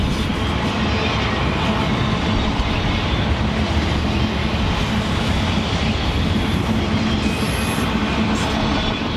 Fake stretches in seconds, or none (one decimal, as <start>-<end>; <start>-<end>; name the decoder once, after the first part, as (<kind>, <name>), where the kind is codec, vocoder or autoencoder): none